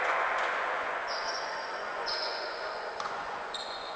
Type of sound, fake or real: fake